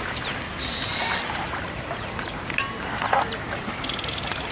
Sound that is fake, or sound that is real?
real